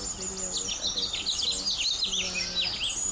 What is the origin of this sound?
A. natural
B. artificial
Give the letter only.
A